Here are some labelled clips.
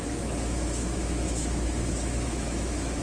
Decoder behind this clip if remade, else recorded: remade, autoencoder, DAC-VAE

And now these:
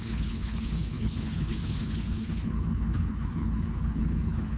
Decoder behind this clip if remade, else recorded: remade, codec, HILCodec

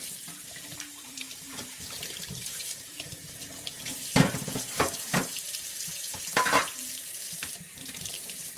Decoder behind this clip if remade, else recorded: remade, vocoder, BigVGAN v2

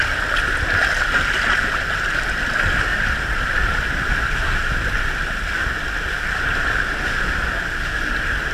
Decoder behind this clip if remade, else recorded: recorded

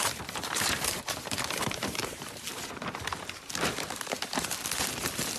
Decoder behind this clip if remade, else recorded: remade, vocoder, BigVGAN v2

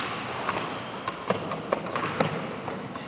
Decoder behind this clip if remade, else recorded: recorded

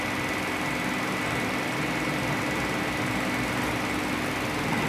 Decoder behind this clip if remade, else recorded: recorded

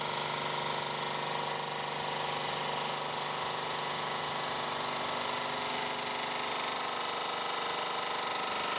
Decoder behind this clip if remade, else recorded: recorded